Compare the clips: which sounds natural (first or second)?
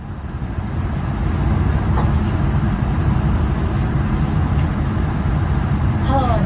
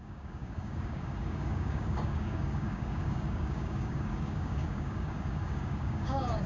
first